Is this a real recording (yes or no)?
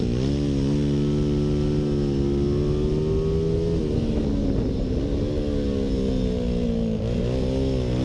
yes